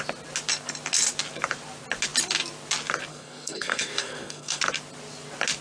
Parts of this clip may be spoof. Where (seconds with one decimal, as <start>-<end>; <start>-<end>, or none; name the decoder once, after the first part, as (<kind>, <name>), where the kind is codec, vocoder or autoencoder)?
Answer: 3.1-4.6 (codec, SNAC)